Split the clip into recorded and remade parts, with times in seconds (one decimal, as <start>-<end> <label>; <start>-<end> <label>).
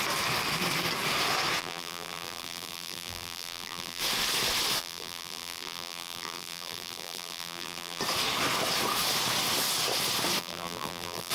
0.0-1.6 recorded; 1.6-4.0 remade; 4.0-4.8 recorded; 4.8-8.0 remade; 8.0-10.4 recorded; 10.4-11.3 remade